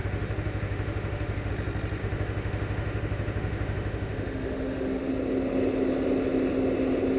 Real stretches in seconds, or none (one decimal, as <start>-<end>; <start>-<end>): 1.5-2.0; 5.1-7.2